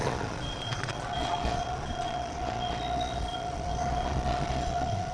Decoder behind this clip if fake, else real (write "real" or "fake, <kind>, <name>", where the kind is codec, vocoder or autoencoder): fake, vocoder, Vocos